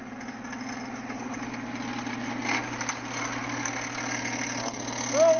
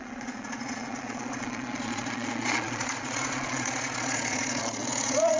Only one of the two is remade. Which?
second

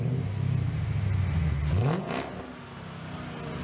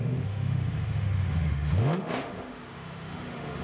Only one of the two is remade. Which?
second